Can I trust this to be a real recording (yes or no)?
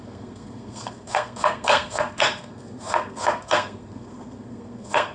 no